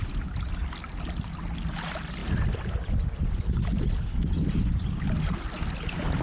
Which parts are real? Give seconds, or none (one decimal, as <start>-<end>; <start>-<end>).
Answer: 0.0-6.2